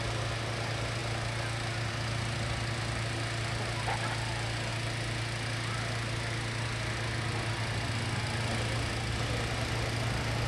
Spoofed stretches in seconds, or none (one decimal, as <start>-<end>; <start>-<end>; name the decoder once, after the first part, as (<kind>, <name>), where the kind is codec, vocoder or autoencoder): none